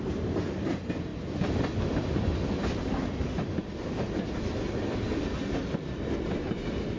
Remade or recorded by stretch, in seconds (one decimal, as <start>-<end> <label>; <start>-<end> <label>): 0.0-1.1 recorded; 1.1-5.2 remade; 5.2-7.0 recorded